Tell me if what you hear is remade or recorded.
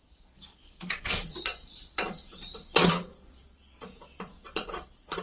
remade